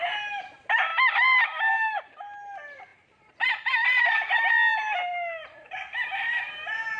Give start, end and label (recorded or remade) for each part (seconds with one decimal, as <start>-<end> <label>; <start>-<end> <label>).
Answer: 0.0-7.0 recorded